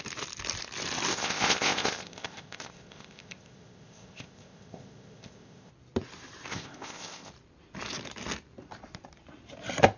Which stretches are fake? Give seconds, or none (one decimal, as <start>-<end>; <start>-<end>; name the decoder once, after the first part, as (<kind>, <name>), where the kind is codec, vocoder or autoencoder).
1.1-5.7 (codec, ZipCodec); 6.5-7.3